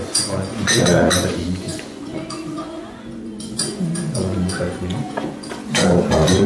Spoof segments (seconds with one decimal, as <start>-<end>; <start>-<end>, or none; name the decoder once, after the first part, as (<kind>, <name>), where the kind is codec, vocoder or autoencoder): 0.0-6.5 (vocoder, Vocos)